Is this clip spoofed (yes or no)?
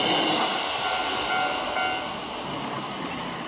no